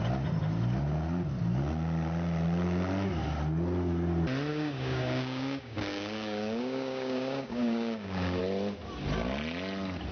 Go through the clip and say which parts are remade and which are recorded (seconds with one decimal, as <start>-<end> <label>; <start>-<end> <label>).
0.0-4.5 recorded; 4.5-8.4 remade; 8.4-10.1 recorded